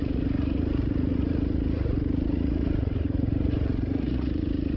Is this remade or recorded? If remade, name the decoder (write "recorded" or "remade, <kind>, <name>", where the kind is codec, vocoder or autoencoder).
remade, vocoder, Vocos